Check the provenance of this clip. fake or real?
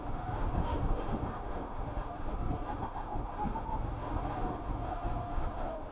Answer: fake